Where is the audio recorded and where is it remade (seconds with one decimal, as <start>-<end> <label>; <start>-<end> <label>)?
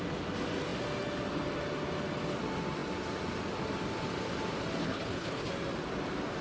0.0-4.8 recorded; 4.8-5.5 remade; 5.5-6.4 recorded